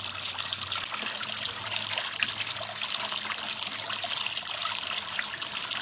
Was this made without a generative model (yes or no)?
yes